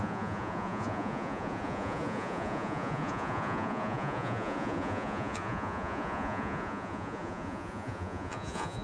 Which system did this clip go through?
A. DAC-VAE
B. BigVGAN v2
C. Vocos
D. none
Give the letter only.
C